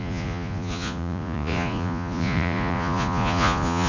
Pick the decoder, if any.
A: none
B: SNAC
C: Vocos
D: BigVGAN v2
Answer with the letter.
C